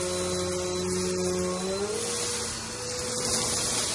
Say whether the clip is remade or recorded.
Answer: recorded